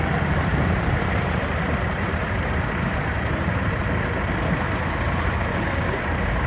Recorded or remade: remade